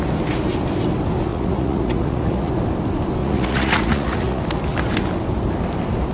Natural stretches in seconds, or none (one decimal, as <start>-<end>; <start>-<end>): 0.0-1.3; 2.5-3.2; 4.4-6.1